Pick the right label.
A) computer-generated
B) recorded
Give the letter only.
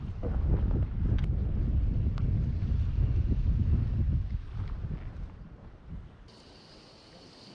B